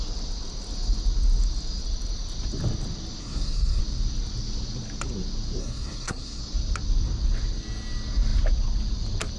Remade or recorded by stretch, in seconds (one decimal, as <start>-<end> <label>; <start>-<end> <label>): 0.0-3.2 recorded; 3.2-3.8 remade; 3.8-5.6 recorded; 5.6-6.4 remade; 6.4-9.4 recorded